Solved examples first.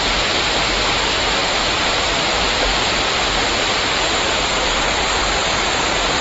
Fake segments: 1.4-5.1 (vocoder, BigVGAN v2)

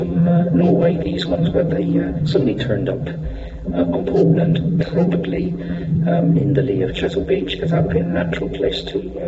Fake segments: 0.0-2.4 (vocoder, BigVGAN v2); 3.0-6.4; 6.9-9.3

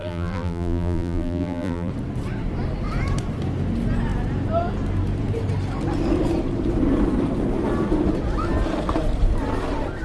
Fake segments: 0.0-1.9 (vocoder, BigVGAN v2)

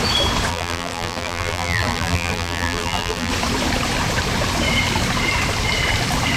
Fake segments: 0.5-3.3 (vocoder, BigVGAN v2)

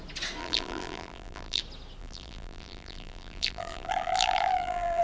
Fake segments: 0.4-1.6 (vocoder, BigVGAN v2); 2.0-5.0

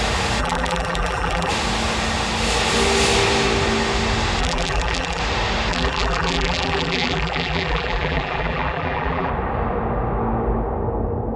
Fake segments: 0.4-1.5 (vocoder, BigVGAN v2); 4.4-5.2; 5.7-9.3

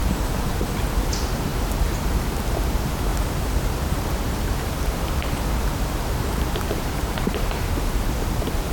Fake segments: 0.0-0.8 (vocoder, BigVGAN v2); 3.1-8.0